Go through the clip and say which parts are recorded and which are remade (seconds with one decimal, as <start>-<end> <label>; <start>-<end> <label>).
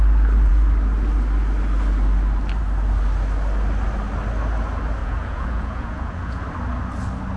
0.0-5.0 recorded; 5.0-6.4 remade; 6.4-7.4 recorded